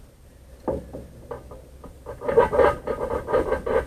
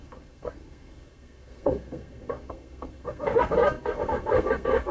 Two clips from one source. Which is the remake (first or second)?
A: second